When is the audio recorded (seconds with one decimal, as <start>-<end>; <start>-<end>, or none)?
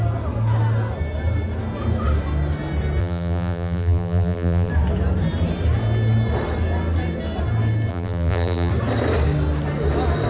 0.0-3.0; 4.7-7.9; 8.7-10.3